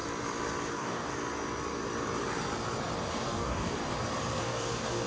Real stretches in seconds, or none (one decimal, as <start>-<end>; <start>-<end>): 0.0-0.7; 1.1-3.1; 3.8-4.4